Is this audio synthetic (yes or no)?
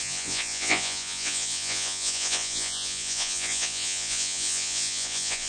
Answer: yes